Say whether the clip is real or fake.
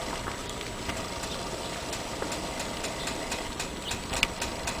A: real